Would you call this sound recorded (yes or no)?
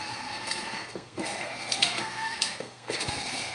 no